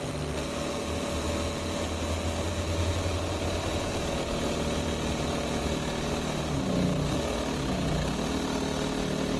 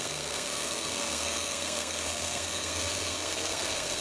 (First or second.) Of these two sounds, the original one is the first